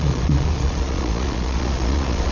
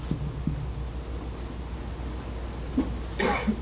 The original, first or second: second